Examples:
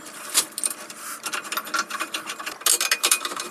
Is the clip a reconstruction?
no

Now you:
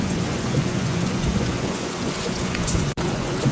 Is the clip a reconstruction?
yes